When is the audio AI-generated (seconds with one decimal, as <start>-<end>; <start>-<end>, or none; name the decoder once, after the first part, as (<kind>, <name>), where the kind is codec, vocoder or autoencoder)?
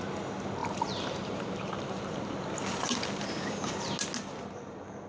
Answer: 0.6-3.7 (vocoder, BigVGAN v2)